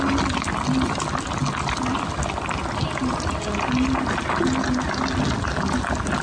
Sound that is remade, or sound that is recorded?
recorded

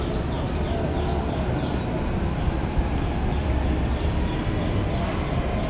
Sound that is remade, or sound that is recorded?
recorded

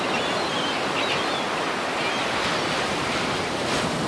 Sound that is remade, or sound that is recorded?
recorded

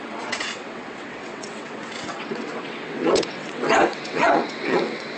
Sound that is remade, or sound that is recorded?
remade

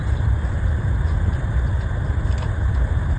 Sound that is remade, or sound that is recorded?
recorded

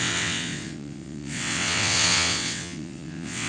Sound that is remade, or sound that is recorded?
remade